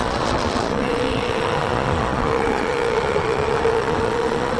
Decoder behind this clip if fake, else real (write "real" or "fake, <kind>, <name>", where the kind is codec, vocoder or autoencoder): fake, vocoder, Vocos